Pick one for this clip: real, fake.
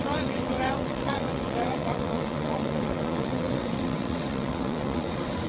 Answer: fake